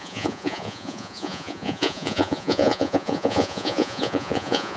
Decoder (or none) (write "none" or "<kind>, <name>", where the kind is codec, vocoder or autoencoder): vocoder, Vocos